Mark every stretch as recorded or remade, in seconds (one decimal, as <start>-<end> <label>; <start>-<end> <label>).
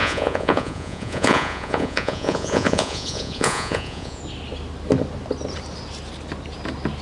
0.0-4.2 remade; 4.2-7.0 recorded